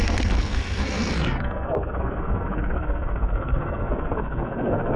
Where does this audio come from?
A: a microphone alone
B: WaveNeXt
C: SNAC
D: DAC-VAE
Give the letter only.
C